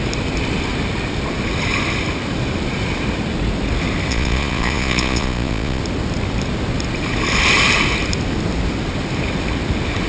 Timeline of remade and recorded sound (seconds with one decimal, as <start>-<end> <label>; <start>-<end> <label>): 0.0-4.1 recorded; 4.1-5.8 remade; 5.8-10.1 recorded